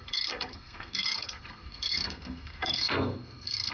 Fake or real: fake